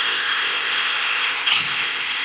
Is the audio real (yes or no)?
no